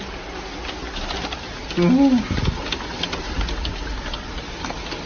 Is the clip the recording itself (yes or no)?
yes